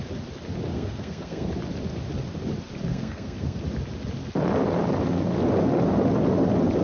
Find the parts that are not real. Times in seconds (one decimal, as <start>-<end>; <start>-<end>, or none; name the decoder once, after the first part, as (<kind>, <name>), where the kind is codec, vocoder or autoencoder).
0.7-1.5 (codec, SNAC); 2.9-3.6